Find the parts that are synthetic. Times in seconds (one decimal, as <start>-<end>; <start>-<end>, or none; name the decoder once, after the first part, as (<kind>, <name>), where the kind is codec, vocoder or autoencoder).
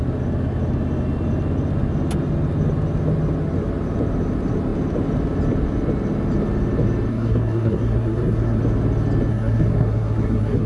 7.1-8.6 (codec, SNAC); 9.3-10.7